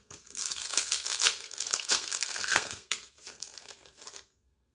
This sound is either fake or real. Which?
fake